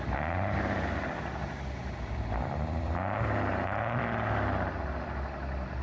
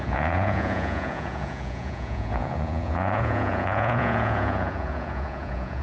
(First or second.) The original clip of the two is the first